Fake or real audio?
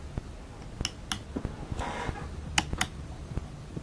real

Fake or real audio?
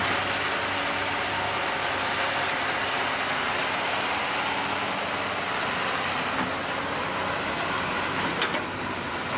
real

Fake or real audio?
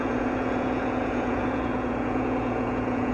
fake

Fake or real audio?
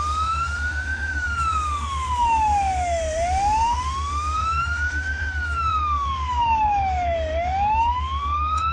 fake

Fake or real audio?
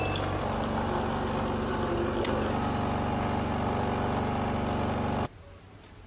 real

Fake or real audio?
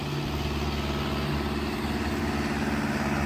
real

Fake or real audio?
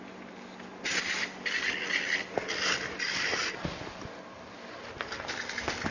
real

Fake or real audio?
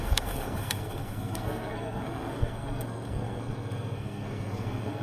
fake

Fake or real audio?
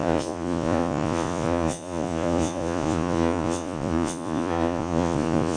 fake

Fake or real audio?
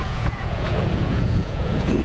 fake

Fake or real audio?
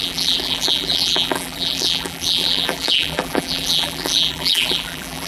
fake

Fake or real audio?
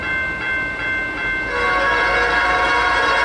real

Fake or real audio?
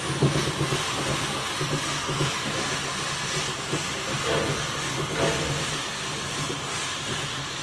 real